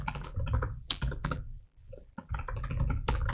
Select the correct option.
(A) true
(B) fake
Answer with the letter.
B